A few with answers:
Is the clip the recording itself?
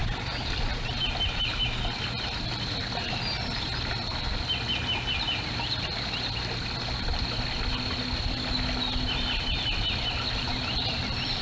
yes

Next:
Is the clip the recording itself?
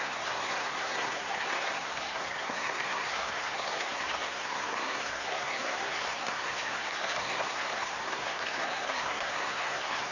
no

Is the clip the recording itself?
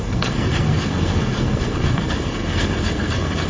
no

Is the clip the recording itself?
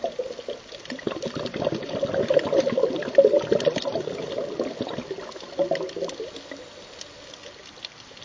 yes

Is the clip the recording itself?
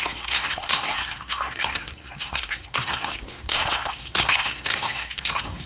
no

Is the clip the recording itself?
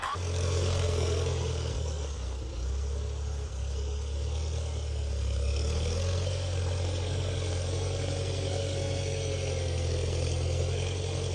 no